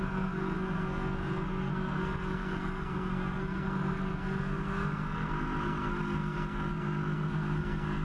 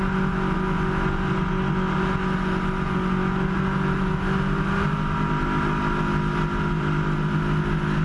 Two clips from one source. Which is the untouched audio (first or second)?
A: second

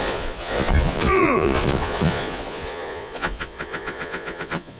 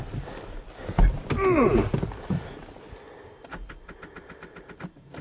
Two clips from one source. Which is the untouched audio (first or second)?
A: second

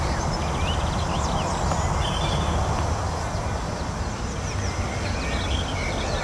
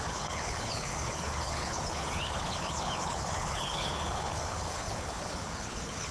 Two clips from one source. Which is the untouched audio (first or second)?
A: first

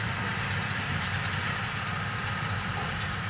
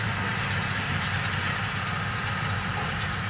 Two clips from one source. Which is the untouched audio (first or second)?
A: second